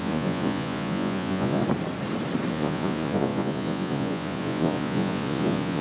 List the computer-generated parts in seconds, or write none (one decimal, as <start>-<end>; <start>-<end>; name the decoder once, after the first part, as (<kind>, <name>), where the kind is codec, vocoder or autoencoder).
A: 0.0-1.6 (vocoder, Vocos); 2.5-5.8